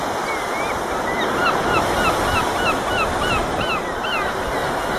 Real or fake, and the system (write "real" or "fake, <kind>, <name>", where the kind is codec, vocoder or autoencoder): real